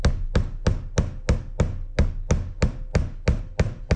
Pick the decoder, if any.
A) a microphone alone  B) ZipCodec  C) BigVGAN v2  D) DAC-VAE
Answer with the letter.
A